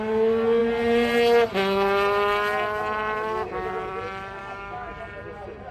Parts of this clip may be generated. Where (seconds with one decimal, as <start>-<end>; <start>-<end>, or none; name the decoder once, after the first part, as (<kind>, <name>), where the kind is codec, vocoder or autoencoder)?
4.4-5.0 (codec, DAC)